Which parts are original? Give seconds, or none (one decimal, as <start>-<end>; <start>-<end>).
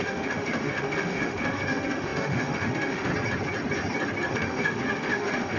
3.1-4.3